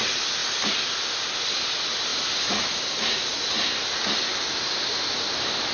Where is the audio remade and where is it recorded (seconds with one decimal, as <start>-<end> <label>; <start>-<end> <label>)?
0.0-5.7 recorded

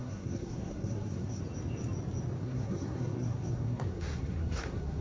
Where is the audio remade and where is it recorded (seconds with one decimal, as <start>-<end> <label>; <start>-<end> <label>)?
0.0-1.4 remade; 1.4-2.4 recorded; 2.4-5.0 remade